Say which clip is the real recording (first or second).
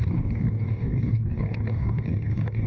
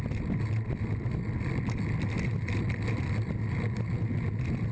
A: second